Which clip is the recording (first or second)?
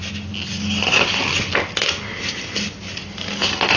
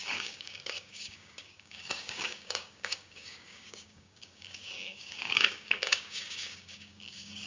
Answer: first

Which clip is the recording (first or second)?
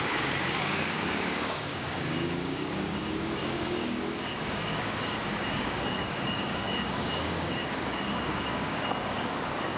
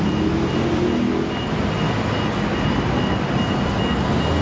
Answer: second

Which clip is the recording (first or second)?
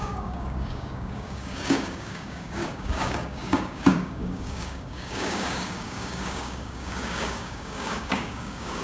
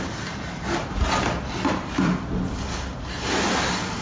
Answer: second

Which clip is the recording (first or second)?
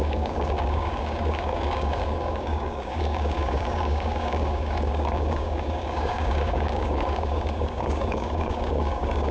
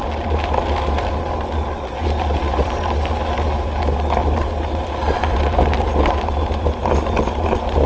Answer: second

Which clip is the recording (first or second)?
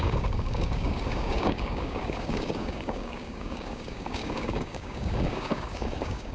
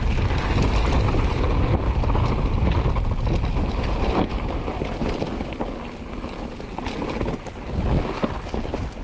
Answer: second